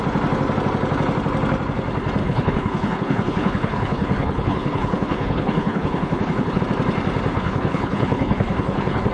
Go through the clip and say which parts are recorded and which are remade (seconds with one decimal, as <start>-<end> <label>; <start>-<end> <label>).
0.0-2.2 recorded; 2.2-6.6 remade; 6.6-7.3 recorded; 7.3-9.1 remade